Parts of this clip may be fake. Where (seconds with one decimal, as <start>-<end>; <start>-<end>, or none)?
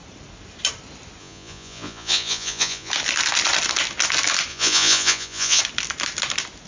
1.2-2.9; 4.5-5.6